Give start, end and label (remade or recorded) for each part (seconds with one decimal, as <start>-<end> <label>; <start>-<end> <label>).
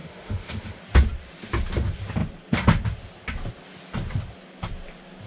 0.0-0.8 remade; 0.8-5.3 recorded